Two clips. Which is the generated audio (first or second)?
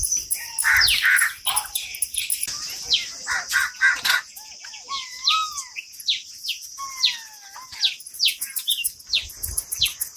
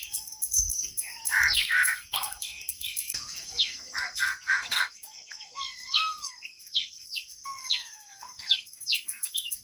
second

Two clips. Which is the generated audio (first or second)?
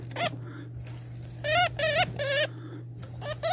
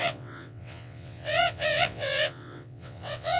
second